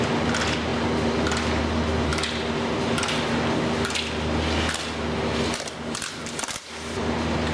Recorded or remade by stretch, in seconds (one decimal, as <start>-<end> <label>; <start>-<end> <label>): 0.0-7.5 recorded